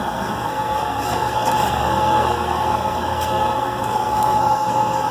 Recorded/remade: remade